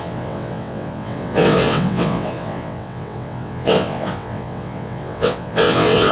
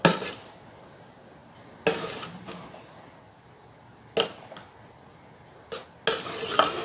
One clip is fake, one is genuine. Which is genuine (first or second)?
second